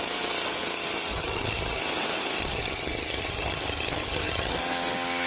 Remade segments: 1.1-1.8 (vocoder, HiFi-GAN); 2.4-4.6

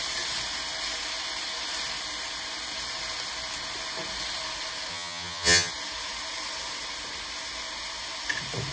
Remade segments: 4.9-5.7 (vocoder, HiFi-GAN)

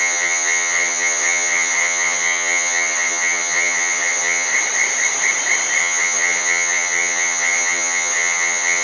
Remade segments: 0.0-4.5 (vocoder, HiFi-GAN); 5.8-8.8

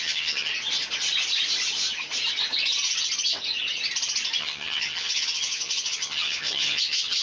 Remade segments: 0.0-0.5 (vocoder, HiFi-GAN); 4.4-7.2

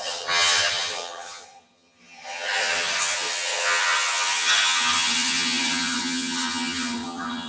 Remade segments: 0.0-7.5 (vocoder, HiFi-GAN)

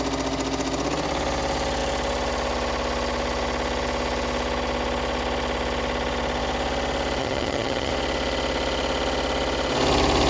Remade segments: 7.2-7.9 (vocoder, HiFi-GAN)

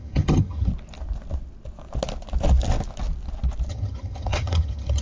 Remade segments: 0.0-0.7 (vocoder, HiFi-GAN); 3.7-5.0

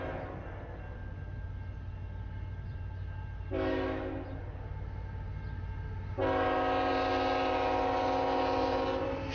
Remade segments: none